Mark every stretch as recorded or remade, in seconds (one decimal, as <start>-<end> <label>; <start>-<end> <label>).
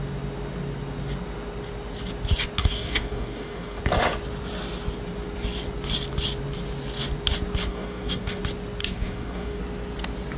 0.0-2.6 recorded; 2.6-3.8 remade; 3.8-7.6 recorded; 7.6-8.4 remade; 8.4-8.8 recorded; 8.8-9.6 remade; 9.6-10.4 recorded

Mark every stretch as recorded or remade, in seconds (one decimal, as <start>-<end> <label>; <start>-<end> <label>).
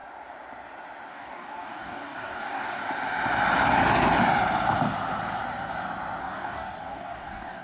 0.0-1.1 recorded; 1.1-2.8 remade; 2.8-6.2 recorded; 6.2-7.6 remade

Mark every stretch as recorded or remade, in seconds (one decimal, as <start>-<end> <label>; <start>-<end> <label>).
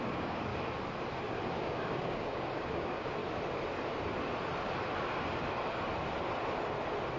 0.0-0.5 remade; 0.5-1.5 recorded; 1.5-3.2 remade; 3.2-7.2 recorded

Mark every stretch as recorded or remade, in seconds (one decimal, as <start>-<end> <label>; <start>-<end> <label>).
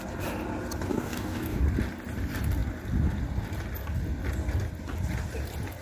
0.0-0.9 recorded; 0.9-1.6 remade; 1.6-5.8 recorded